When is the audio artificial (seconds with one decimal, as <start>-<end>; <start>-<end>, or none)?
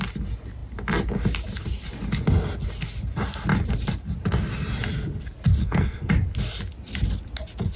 5.6-6.1